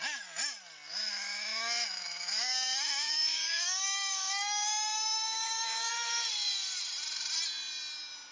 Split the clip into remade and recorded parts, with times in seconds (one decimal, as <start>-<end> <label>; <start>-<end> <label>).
0.0-0.9 recorded; 0.9-5.9 remade; 5.9-8.3 recorded